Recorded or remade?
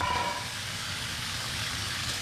remade